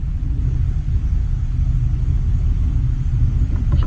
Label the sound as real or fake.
real